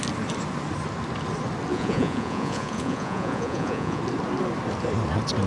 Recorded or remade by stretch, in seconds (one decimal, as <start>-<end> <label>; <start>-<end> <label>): 0.0-1.7 recorded; 1.7-4.0 remade; 4.0-5.5 recorded